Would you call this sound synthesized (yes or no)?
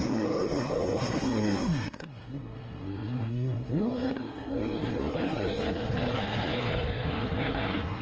yes